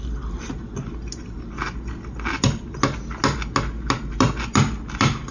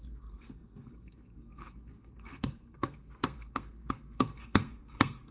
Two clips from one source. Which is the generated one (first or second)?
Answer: second